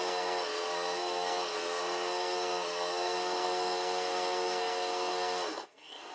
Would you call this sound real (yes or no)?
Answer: no